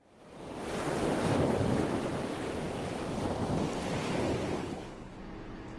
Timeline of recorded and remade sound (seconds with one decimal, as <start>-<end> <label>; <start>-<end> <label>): 0.0-4.6 recorded; 4.6-5.2 remade; 5.2-5.8 recorded